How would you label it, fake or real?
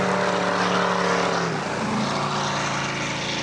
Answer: real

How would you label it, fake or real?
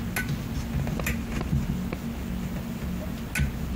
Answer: real